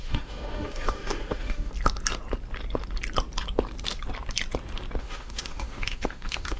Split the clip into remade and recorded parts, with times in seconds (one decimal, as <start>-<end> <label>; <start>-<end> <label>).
0.0-1.7 remade; 1.7-5.0 recorded; 5.0-6.6 remade